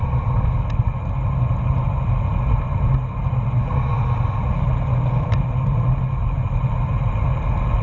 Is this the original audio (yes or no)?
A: yes